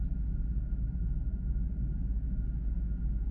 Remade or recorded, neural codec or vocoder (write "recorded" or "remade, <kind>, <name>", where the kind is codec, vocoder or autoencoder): recorded